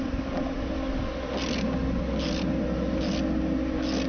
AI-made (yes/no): no